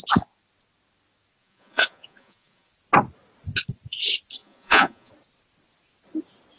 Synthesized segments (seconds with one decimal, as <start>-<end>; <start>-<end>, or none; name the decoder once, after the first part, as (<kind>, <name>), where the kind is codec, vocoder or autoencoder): 1.4-2.7 (vocoder, Vocos); 4.4-5.1